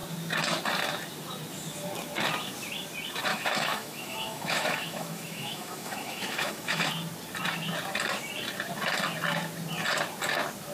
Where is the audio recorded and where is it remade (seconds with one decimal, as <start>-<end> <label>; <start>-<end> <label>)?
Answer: 0.0-3.3 recorded; 3.3-6.9 remade; 6.9-10.7 recorded